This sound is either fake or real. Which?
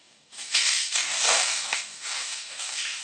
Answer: fake